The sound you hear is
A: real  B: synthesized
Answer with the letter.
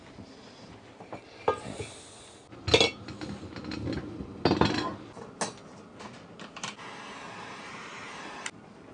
A